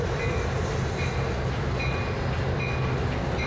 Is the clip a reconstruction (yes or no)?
no